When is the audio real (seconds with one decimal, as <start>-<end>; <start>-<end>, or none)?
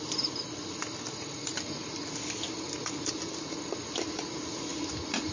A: 0.8-4.0; 4.7-5.3